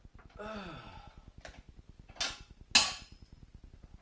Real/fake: real